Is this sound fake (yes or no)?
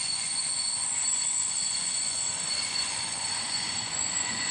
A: yes